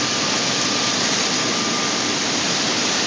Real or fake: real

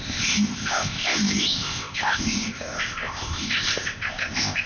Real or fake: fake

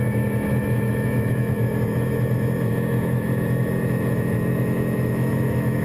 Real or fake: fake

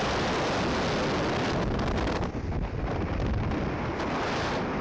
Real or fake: real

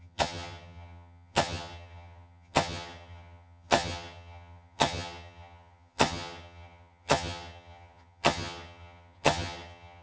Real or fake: fake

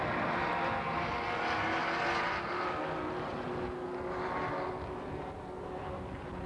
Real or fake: real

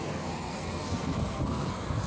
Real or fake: fake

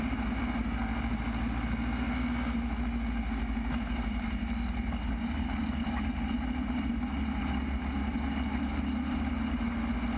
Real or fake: real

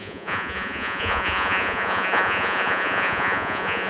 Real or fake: fake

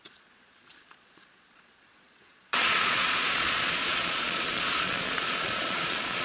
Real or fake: fake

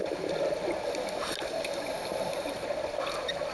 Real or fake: real